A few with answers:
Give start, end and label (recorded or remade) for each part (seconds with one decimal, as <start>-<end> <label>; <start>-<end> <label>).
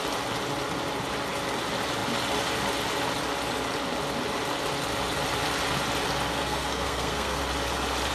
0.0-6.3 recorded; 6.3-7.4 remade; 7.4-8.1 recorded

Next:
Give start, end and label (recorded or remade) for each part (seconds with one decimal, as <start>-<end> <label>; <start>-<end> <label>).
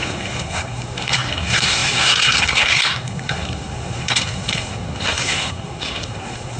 0.0-6.6 remade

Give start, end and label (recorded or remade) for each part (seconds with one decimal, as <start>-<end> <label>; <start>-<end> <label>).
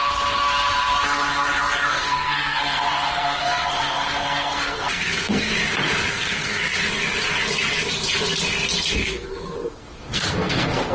0.0-1.9 recorded; 1.9-5.5 remade; 5.5-6.1 recorded; 6.1-6.7 remade; 6.7-8.9 recorded; 8.9-10.9 remade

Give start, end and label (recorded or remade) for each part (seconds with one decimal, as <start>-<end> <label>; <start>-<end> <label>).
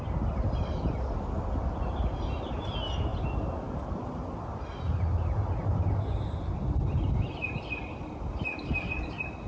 0.0-9.5 recorded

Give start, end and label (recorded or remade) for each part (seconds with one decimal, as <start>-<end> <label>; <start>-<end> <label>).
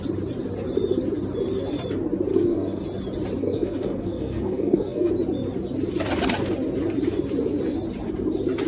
0.0-2.3 recorded; 2.3-2.8 remade; 2.8-3.4 recorded; 3.4-5.1 remade; 5.1-8.7 recorded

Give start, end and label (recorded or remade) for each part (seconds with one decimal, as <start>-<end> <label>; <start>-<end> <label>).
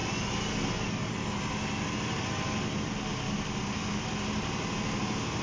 0.0-5.4 recorded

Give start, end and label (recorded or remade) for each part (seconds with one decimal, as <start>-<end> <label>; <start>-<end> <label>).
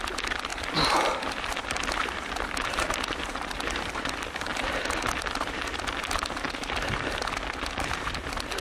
0.0-8.6 recorded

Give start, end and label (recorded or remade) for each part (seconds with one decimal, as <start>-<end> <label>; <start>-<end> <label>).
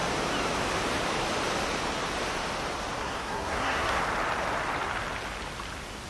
0.0-3.0 recorded; 3.0-4.0 remade; 4.0-6.1 recorded